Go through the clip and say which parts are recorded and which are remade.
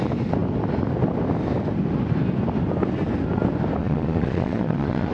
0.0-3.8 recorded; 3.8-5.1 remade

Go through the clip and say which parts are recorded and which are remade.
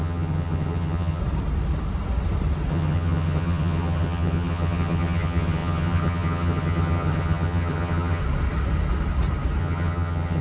0.0-1.2 remade; 1.2-2.7 recorded; 2.7-8.2 remade; 8.2-9.6 recorded; 9.6-10.4 remade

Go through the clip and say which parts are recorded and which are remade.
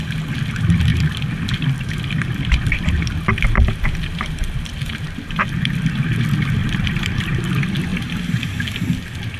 0.0-3.5 recorded; 3.5-5.7 remade; 5.7-6.6 recorded; 6.6-7.4 remade; 7.4-7.9 recorded; 7.9-8.5 remade; 8.5-9.4 recorded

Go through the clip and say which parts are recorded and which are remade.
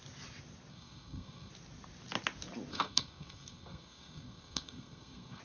0.0-0.7 recorded; 0.7-1.5 remade; 1.5-2.7 recorded; 2.7-5.4 remade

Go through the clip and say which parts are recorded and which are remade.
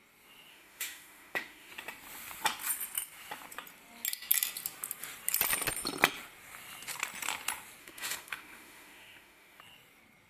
0.0-0.5 recorded; 0.5-1.7 remade; 1.7-7.8 recorded; 7.8-9.6 remade; 9.6-10.3 recorded